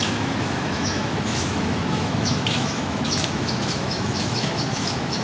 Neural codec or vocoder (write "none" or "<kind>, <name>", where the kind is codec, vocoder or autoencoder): autoencoder, DAC-VAE